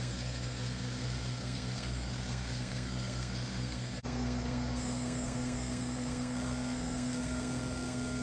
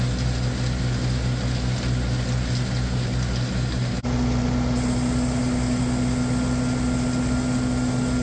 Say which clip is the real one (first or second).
second